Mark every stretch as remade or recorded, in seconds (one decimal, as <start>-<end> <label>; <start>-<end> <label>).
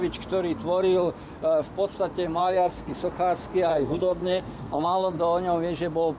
0.0-2.4 recorded; 2.4-2.9 remade; 2.9-3.7 recorded; 3.7-5.2 remade; 5.2-6.2 recorded